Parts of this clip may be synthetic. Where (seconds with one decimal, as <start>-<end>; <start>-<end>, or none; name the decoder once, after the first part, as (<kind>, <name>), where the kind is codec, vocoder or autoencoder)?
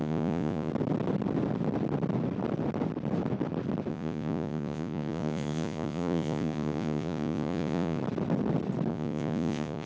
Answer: 0.0-0.7 (vocoder, Vocos); 3.9-8.0; 8.9-9.9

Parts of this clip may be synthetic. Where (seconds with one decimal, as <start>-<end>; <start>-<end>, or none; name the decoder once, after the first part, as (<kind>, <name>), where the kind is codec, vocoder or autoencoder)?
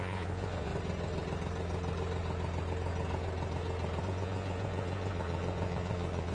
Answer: 0.0-0.7 (vocoder, Vocos); 4.0-6.3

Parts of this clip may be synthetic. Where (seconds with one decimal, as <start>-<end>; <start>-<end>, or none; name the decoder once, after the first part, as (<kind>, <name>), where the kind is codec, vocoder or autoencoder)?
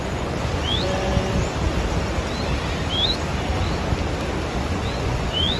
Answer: 0.0-1.1 (vocoder, Vocos); 4.5-5.6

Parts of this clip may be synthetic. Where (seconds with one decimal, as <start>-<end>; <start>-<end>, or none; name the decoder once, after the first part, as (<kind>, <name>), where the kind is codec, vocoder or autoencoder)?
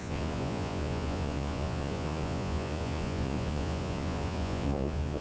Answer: 0.0-5.2 (vocoder, Vocos)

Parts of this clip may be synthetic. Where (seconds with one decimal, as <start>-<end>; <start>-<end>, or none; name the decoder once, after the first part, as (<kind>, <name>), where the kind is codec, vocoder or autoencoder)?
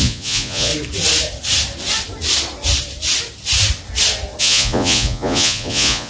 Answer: 0.0-0.7 (vocoder, Vocos); 4.4-6.1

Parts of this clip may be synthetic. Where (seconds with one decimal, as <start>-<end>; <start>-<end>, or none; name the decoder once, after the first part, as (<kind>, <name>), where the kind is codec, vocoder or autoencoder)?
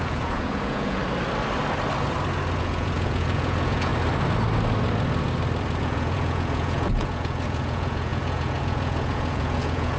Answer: 0.0-1.0 (vocoder, Vocos); 2.6-3.9; 5.8-10.0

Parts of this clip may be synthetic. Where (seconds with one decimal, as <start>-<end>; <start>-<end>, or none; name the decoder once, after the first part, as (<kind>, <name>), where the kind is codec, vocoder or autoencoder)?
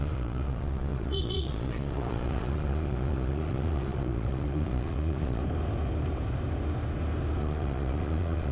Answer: 0.0-5.4 (vocoder, Vocos); 7.4-8.5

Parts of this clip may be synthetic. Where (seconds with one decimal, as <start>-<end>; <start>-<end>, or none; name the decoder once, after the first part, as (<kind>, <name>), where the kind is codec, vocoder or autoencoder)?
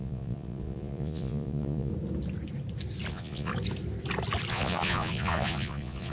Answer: 0.0-1.9 (vocoder, Vocos); 3.1-3.5; 4.5-6.1